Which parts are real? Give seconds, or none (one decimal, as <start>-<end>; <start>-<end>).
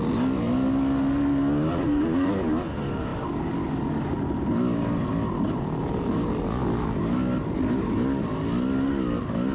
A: 0.0-1.7; 2.3-9.5